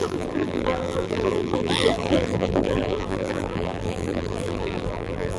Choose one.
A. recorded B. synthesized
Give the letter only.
B